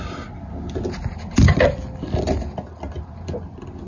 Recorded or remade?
recorded